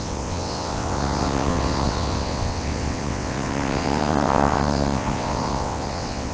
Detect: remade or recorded remade